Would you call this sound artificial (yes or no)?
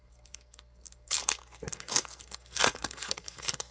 yes